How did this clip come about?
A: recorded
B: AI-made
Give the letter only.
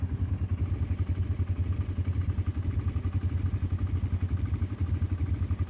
A